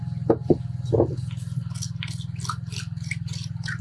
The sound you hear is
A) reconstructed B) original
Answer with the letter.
B